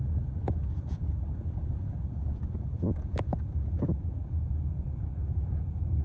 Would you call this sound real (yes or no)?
no